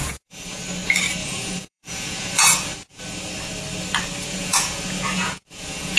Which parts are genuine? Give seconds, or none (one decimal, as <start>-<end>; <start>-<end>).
0.6-1.2; 3.0-4.3